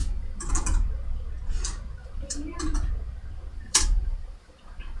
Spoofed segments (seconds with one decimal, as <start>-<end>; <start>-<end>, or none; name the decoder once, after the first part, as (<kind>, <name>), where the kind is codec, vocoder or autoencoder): 0.0-0.5 (vocoder, BigVGAN v2); 2.0-2.9; 3.5-5.0